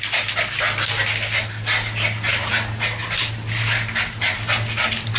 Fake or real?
real